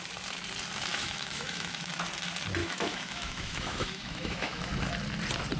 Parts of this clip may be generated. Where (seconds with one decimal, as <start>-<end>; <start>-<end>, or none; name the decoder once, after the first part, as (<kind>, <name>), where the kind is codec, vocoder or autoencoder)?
0.9-1.9 (autoencoder, DAC-VAE); 2.6-4.7